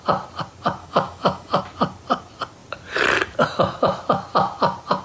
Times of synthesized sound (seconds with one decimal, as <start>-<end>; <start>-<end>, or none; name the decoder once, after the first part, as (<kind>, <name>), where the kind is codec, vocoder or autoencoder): 0.8-1.6 (autoencoder, DAC-VAE)